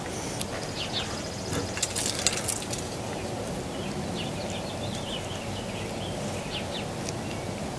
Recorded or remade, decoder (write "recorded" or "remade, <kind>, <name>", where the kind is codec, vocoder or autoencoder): recorded